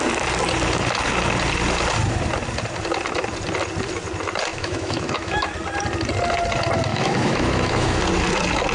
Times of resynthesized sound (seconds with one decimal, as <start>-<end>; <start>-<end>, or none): 4.5-5.5; 6.9-8.0